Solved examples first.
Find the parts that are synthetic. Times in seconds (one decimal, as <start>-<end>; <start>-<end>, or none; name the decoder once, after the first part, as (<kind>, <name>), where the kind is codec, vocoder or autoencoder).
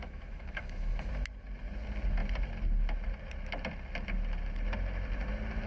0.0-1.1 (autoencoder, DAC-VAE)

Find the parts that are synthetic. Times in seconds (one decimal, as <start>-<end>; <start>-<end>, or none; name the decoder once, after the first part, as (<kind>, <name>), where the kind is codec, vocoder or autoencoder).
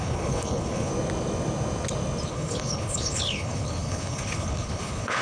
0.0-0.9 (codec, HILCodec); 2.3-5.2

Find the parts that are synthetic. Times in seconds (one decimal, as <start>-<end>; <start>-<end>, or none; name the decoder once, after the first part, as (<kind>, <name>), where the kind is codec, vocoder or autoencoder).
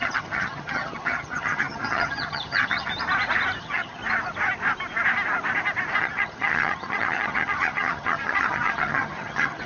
0.0-2.9 (vocoder, HiFi-GAN); 3.6-4.0; 6.0-9.7